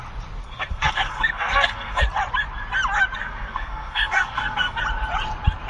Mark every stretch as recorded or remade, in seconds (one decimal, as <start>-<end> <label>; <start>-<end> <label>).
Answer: 0.0-0.4 recorded; 0.4-2.0 remade; 2.0-3.2 recorded; 3.2-4.8 remade; 4.8-5.7 recorded